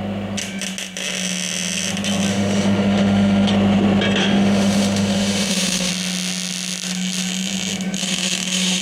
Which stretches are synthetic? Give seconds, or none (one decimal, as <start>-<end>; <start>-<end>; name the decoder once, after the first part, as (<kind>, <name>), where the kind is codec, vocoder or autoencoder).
2.3-3.5 (autoencoder, DAC-VAE); 4.2-5.9; 8.0-8.8

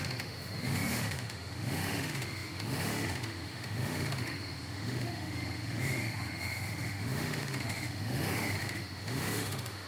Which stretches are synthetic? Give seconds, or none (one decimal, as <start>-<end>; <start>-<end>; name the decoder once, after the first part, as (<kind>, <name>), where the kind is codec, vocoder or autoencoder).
0.0-9.9 (autoencoder, DAC-VAE)